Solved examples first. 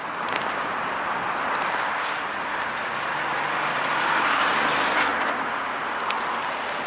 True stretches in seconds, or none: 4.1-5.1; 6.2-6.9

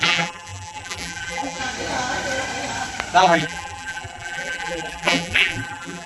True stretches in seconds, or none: 1.6-3.2